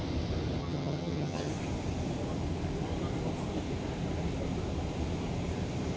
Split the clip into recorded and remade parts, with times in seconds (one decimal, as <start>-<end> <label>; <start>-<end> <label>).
0.0-0.6 recorded; 0.6-1.5 remade; 1.5-6.0 recorded